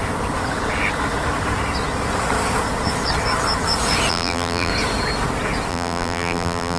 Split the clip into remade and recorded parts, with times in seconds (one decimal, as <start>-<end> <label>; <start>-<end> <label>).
0.0-4.1 recorded; 4.1-4.7 remade; 4.7-5.7 recorded; 5.7-6.8 remade